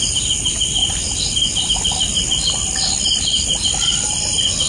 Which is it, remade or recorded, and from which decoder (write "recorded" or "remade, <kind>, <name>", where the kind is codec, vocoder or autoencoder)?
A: recorded